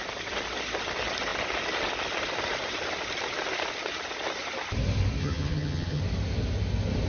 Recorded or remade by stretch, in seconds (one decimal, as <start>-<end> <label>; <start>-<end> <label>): 0.0-5.2 recorded; 5.2-6.0 remade; 6.0-7.1 recorded